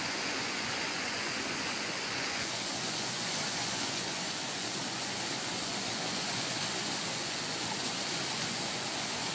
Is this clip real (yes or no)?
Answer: no